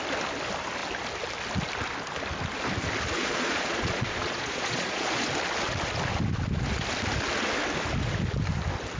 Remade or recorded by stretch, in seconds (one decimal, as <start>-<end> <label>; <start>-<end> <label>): 0.0-3.2 recorded; 3.2-5.3 remade; 5.3-9.0 recorded

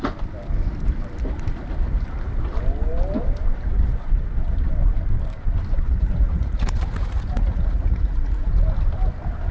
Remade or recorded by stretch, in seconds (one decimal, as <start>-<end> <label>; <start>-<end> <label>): 0.0-5.9 recorded; 5.9-8.5 remade; 8.5-9.5 recorded

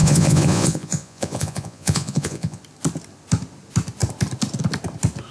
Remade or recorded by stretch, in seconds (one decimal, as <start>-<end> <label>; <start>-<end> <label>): 0.0-2.6 remade; 2.6-5.3 recorded